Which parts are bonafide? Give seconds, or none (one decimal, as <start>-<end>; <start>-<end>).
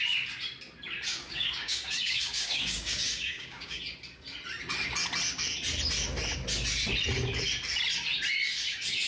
0.0-1.1; 3.8-9.1